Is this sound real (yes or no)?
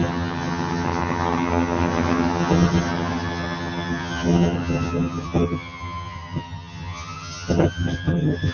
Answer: no